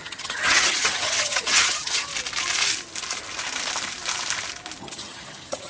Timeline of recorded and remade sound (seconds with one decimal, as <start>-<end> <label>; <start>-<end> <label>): 0.0-2.1 remade; 2.1-4.8 recorded; 4.8-5.7 remade